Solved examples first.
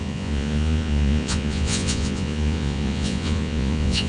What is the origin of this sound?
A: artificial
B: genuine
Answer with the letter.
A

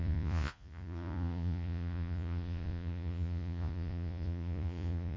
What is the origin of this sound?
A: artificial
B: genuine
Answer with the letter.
A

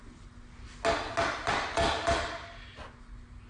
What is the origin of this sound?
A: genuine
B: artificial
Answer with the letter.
A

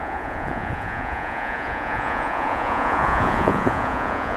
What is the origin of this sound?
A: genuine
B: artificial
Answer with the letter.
B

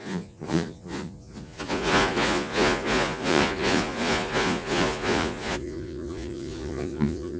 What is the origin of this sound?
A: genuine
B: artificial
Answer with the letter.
B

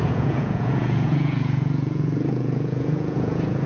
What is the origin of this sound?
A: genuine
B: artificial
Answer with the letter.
B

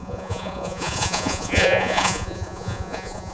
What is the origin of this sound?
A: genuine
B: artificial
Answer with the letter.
B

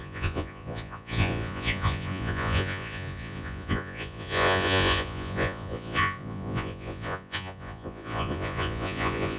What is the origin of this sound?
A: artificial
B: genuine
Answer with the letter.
A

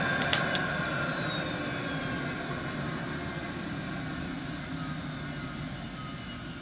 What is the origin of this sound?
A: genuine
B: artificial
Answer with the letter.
A